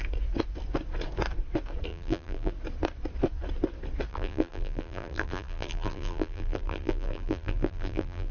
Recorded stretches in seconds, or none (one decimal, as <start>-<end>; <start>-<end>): 0.0-1.9; 2.5-4.1